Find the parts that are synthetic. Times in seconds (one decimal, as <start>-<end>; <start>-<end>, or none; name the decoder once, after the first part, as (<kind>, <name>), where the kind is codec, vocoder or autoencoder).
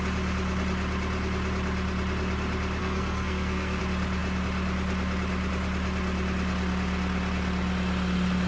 2.8-3.8 (codec, SNAC)